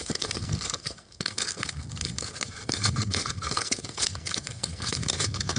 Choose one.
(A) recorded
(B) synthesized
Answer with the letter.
B